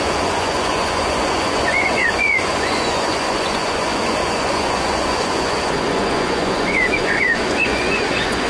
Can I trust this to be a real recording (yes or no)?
no